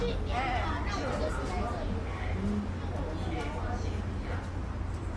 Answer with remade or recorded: recorded